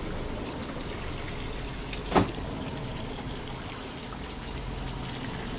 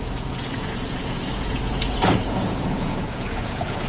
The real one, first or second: first